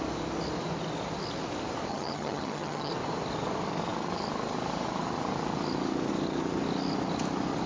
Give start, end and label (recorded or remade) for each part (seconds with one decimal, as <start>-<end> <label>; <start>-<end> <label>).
0.0-1.9 recorded; 1.9-2.9 remade; 2.9-7.7 recorded